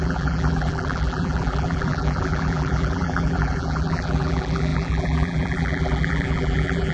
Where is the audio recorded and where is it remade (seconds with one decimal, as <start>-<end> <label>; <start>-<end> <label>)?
0.0-6.9 remade